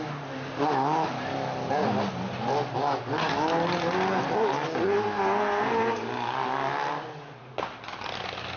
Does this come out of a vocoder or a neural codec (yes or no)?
no